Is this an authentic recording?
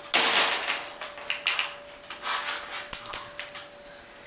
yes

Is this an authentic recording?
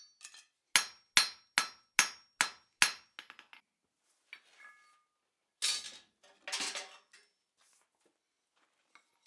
yes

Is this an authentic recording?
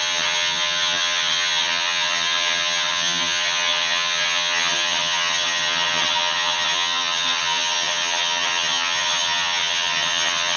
no